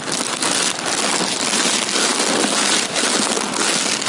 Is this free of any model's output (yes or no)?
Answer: yes